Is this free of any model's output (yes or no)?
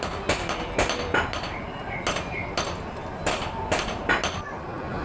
yes